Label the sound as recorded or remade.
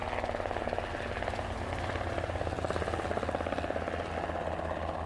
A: recorded